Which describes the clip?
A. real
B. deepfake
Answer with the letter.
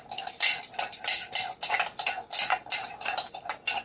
A